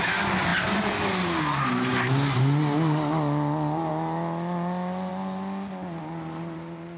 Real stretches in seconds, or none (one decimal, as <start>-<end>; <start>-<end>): 0.0-7.0